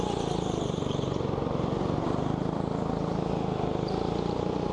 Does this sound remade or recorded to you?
remade